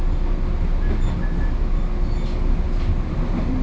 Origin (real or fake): real